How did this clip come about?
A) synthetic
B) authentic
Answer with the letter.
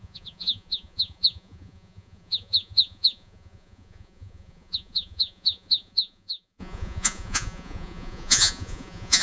A